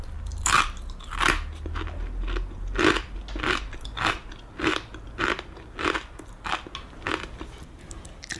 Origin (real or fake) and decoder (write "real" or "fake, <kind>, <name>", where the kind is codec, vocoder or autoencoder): real